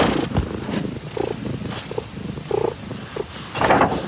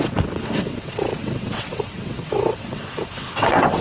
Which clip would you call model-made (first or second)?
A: second